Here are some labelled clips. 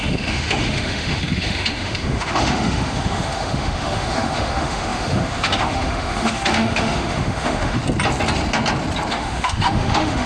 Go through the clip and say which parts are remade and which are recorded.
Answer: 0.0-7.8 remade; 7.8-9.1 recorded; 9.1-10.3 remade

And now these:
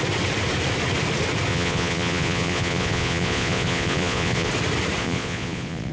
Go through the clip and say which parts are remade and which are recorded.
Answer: 0.0-1.5 recorded; 1.5-4.5 remade; 4.5-5.0 recorded; 5.0-5.9 remade

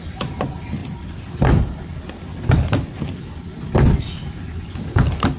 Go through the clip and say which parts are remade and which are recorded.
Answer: 0.0-5.4 recorded